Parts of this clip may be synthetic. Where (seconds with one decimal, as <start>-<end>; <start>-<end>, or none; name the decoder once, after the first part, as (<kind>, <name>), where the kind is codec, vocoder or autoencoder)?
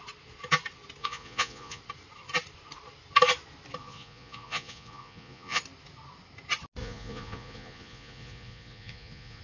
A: 1.0-1.8 (vocoder, Vocos); 3.8-5.6; 6.8-9.4